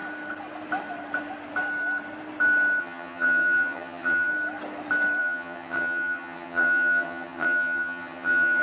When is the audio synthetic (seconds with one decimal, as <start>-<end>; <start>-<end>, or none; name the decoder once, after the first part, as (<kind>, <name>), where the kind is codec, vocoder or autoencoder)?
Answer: 2.8-4.3 (vocoder, HiFi-GAN); 5.2-8.6